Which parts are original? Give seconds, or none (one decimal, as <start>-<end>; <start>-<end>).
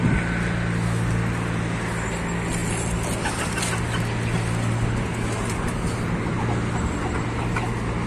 0.0-8.1